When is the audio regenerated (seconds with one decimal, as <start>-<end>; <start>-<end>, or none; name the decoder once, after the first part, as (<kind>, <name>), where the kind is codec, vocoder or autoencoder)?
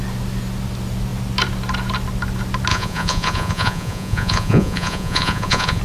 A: 2.7-5.8 (vocoder, Vocos)